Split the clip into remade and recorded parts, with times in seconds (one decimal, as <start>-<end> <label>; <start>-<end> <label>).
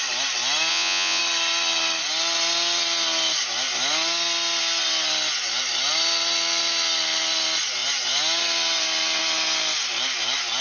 0.0-0.7 recorded; 0.7-1.2 remade; 1.2-10.6 recorded